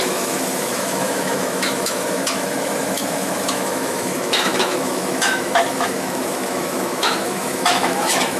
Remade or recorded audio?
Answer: remade